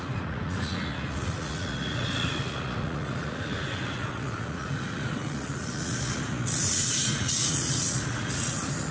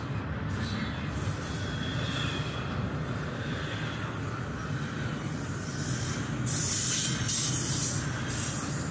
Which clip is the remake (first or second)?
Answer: first